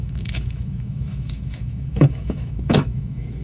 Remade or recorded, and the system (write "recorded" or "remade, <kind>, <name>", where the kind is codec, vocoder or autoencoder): remade, autoencoder, DAC-VAE